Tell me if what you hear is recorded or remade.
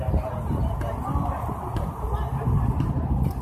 recorded